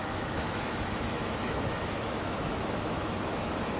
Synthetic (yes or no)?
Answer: yes